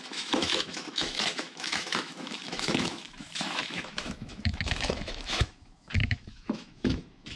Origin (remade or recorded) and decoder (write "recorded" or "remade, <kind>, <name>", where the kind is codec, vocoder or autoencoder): remade, autoencoder, DAC-VAE